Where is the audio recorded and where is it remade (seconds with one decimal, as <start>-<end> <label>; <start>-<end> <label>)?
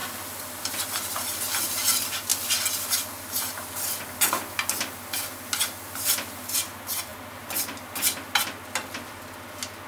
0.0-9.9 recorded